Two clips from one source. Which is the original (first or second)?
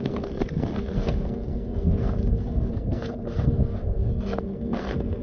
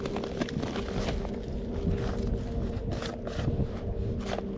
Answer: second